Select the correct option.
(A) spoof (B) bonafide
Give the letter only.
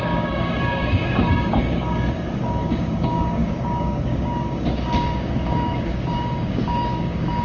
A